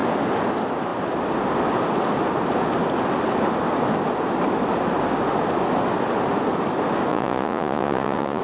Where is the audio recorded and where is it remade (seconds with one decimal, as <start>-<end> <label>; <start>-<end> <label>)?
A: 0.0-7.1 recorded; 7.1-8.4 remade